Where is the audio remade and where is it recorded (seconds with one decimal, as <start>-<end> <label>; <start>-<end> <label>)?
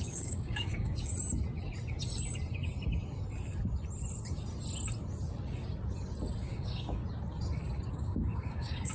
0.0-1.1 remade; 1.1-6.4 recorded; 6.4-7.0 remade; 7.0-7.9 recorded; 7.9-8.9 remade